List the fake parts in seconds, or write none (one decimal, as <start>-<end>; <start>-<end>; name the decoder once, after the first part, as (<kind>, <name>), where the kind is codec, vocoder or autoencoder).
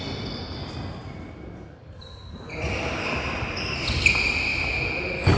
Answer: none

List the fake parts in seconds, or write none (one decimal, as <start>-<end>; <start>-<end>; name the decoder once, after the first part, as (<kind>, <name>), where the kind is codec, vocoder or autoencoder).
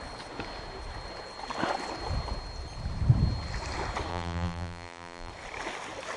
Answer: 4.1-5.3 (vocoder, BigVGAN v2)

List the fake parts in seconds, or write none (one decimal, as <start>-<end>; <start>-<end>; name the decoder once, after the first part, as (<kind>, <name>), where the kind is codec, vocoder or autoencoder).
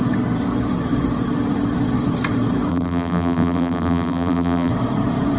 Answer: 2.7-4.7 (vocoder, BigVGAN v2)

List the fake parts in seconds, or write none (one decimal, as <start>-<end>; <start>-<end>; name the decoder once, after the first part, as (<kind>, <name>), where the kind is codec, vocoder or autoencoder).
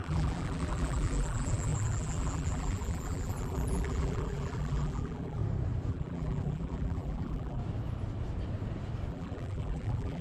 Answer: 0.0-5.4 (vocoder, BigVGAN v2); 5.9-7.6; 9.1-10.2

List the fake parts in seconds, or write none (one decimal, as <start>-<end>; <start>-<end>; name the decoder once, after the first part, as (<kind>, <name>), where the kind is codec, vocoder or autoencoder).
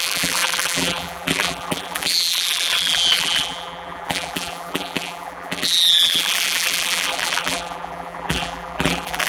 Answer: 0.0-9.3 (vocoder, BigVGAN v2)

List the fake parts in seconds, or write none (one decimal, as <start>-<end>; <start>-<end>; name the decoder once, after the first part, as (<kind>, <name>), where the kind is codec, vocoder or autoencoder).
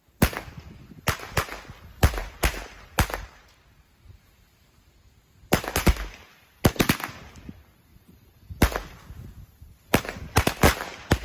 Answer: 2.2-5.9 (vocoder, BigVGAN v2); 7.9-10.2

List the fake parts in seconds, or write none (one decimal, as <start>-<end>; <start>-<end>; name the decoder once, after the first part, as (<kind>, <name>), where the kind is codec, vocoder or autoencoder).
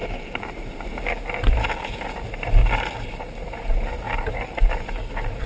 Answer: 0.0-0.9 (vocoder, BigVGAN v2); 2.6-5.5